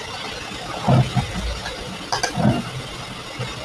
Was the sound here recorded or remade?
recorded